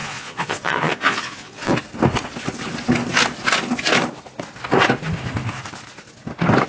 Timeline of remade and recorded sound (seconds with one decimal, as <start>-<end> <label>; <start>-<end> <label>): 0.0-1.7 remade; 1.7-6.7 recorded